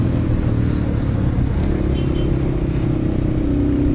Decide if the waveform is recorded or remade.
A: recorded